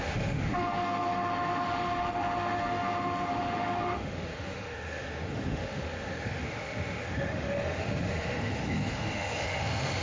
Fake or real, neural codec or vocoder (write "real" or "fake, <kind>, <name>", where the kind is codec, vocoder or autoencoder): fake, autoencoder, DAC-VAE